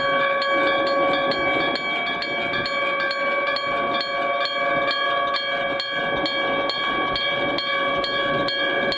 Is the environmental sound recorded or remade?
recorded